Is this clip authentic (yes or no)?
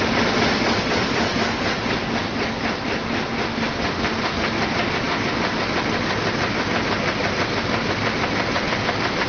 yes